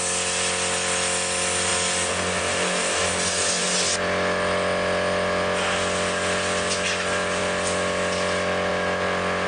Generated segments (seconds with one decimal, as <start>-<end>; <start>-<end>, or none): none